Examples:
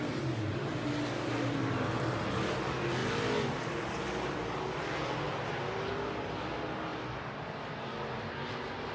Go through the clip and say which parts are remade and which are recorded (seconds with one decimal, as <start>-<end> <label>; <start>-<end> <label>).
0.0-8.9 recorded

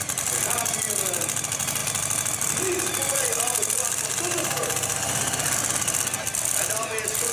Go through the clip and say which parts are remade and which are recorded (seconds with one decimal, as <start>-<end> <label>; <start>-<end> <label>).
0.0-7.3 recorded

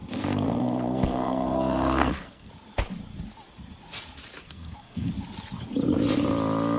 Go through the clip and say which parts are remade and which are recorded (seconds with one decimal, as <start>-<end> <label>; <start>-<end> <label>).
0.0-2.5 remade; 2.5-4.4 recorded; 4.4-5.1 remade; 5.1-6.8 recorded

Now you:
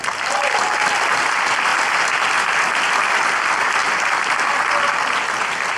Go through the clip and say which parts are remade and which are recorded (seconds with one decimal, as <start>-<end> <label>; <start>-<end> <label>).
0.0-5.8 recorded

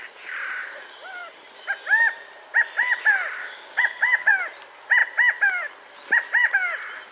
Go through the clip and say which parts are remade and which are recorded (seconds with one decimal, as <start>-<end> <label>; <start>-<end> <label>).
0.0-3.4 recorded; 3.4-4.3 remade; 4.3-7.1 recorded